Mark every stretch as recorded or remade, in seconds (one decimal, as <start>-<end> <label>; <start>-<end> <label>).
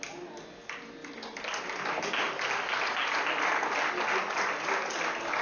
0.0-5.4 recorded